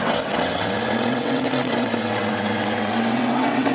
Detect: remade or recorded remade